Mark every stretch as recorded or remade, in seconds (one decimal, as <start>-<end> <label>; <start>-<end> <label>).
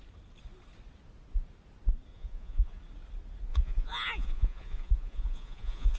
0.0-2.1 recorded; 2.1-2.8 remade; 2.8-3.5 recorded; 3.5-6.0 remade